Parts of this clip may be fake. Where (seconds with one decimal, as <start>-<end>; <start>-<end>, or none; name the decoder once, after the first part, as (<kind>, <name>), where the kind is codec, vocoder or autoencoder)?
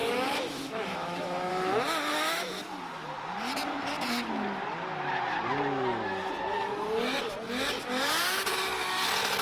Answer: 0.0-1.5 (autoencoder, DAC-VAE); 2.1-2.6